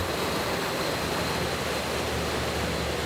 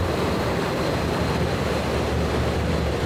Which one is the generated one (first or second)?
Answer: second